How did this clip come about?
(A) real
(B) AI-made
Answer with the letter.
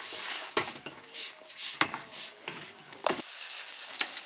B